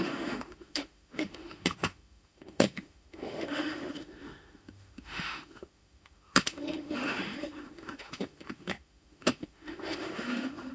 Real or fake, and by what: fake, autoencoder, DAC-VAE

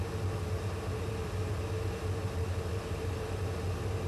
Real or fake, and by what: real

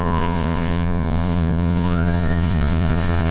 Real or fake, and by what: fake, vocoder, Vocos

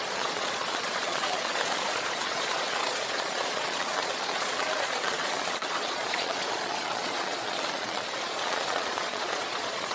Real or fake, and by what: fake, vocoder, Vocos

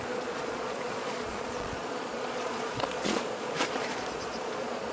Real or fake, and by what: fake, vocoder, Vocos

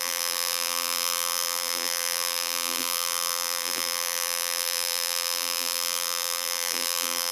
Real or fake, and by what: fake, vocoder, BigVGAN v2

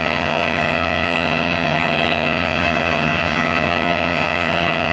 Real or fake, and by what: fake, vocoder, HiFi-GAN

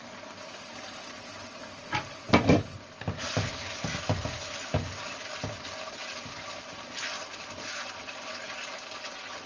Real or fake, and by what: real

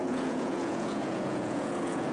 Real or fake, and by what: fake, vocoder, Vocos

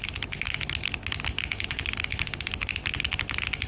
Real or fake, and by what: real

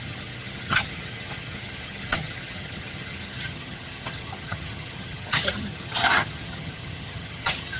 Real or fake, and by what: fake, vocoder, HiFi-GAN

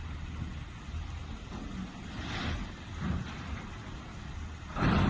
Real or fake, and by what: real